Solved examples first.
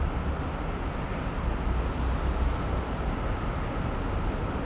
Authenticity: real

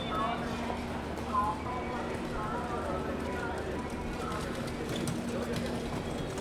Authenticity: real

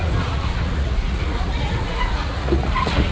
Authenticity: fake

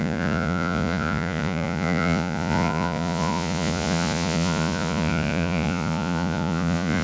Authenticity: fake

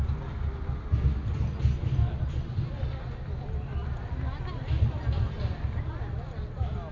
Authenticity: real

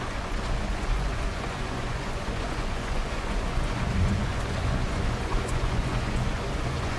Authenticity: fake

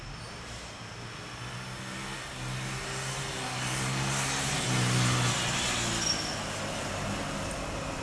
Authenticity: real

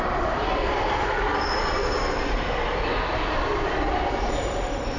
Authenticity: real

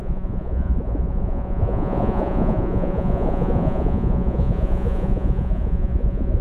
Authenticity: fake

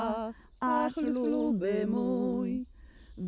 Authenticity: real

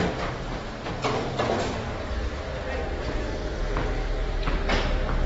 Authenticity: real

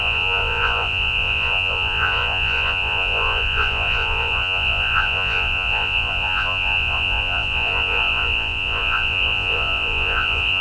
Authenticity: fake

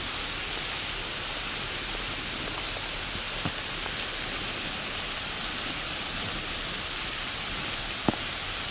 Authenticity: real